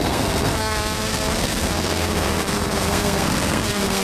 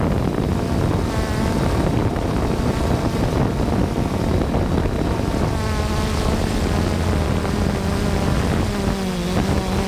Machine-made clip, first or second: first